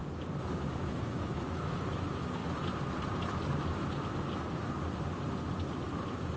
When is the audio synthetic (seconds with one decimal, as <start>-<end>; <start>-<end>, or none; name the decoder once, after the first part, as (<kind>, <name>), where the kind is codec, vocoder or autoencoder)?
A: 0.9-2.4 (autoencoder, DAC-VAE)